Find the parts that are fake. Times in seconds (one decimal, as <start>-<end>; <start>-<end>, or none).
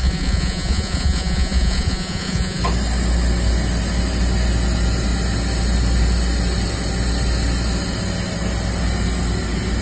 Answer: 0.0-2.6